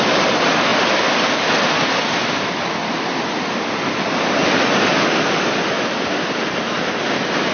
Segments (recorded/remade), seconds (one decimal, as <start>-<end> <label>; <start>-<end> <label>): 0.0-7.5 recorded